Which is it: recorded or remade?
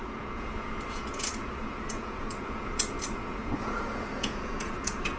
remade